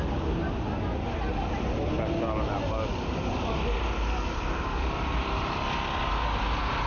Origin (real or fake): real